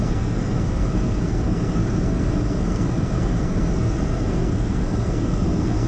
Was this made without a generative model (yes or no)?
no